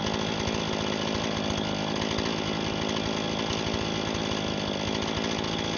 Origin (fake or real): real